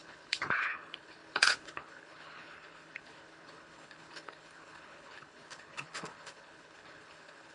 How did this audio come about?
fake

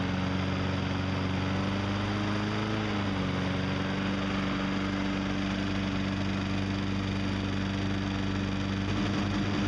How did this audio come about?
real